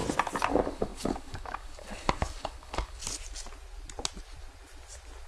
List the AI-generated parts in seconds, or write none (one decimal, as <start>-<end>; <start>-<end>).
0.5-3.0